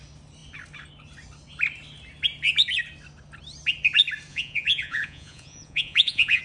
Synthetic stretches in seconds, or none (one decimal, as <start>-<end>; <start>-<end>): 4.3-6.4